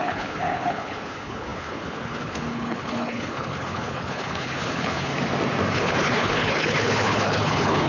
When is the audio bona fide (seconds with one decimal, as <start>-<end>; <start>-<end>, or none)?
5.1-5.7